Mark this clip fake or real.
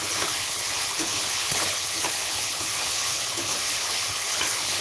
fake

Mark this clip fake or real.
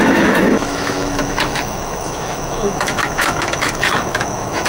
fake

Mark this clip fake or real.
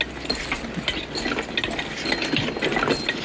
real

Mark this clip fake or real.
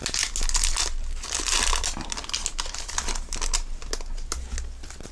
real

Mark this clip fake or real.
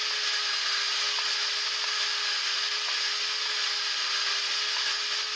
real